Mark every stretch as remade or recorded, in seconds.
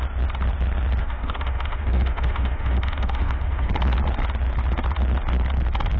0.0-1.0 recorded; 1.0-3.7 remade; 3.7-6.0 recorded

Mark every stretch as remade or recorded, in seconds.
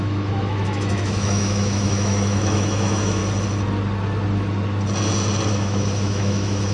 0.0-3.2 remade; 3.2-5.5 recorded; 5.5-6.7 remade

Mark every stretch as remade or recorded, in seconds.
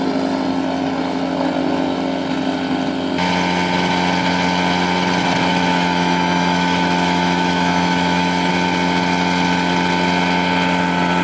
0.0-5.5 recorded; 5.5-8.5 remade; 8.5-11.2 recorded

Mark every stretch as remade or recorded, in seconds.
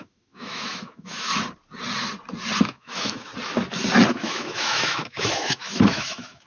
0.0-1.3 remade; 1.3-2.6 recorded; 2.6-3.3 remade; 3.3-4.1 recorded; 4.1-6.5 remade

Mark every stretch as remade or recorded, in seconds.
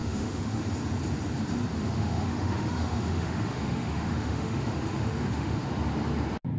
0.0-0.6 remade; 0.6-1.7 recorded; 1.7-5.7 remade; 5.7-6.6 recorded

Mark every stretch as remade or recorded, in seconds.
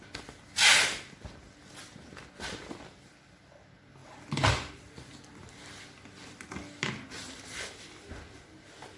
0.0-9.0 recorded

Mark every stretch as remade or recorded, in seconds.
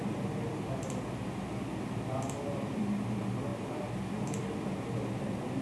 0.0-5.6 recorded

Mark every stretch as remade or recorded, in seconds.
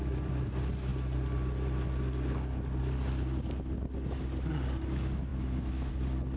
0.0-5.3 recorded; 5.3-5.9 remade; 5.9-6.4 recorded